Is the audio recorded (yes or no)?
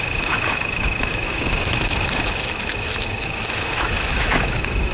no